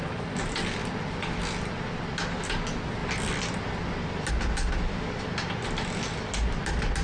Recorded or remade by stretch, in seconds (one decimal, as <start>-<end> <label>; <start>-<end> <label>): 0.0-7.0 recorded